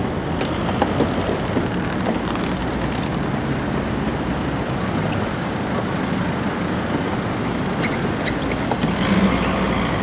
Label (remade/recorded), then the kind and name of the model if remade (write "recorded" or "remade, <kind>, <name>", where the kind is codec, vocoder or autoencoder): recorded